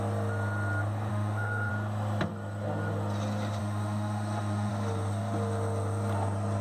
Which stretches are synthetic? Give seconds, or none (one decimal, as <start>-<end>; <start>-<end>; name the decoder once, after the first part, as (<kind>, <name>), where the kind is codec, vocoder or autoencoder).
1.1-1.7 (autoencoder, DAC-VAE); 3.6-4.7